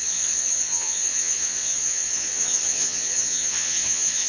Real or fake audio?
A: fake